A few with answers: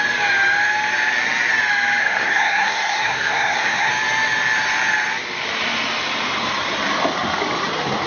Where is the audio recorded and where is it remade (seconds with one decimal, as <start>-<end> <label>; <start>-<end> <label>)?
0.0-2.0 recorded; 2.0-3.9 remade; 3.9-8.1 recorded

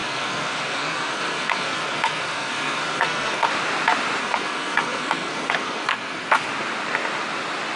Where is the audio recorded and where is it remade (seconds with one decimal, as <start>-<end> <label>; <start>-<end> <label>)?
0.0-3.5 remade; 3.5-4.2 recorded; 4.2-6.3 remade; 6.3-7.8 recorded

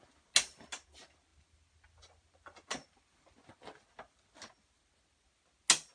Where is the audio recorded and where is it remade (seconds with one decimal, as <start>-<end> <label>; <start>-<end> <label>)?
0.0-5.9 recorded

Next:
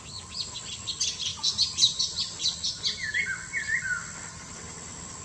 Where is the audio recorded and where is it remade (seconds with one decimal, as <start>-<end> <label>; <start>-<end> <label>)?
0.0-5.2 recorded